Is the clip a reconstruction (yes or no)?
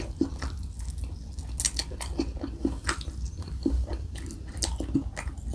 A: no